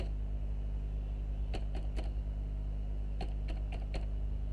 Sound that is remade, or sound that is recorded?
recorded